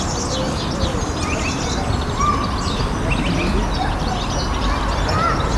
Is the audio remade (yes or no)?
no